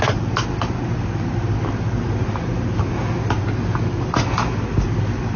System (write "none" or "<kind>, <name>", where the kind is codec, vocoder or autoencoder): none